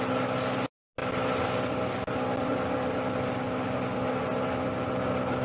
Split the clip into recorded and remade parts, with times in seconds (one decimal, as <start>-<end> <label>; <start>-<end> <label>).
0.0-5.4 recorded